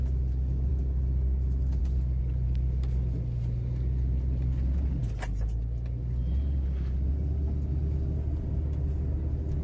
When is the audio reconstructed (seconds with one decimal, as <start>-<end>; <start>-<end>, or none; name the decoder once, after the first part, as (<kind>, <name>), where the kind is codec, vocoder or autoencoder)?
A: none